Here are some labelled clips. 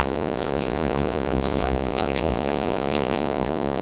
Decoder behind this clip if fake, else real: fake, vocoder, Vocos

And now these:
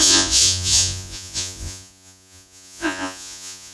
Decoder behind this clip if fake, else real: fake, vocoder, Vocos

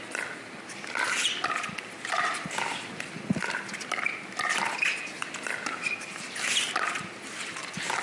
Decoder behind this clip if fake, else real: real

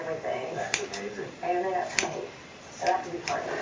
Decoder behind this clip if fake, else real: real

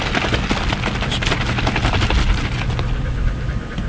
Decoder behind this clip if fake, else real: real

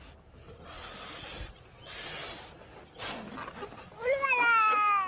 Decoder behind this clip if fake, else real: real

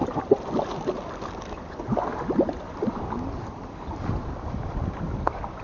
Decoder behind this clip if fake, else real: real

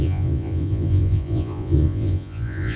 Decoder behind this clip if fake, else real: fake, vocoder, Vocos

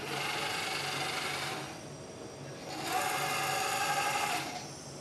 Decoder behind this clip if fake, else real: real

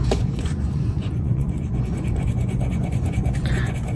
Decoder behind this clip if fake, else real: fake, vocoder, Vocos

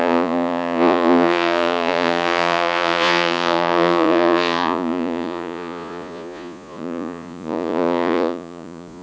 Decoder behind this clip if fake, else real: fake, vocoder, Vocos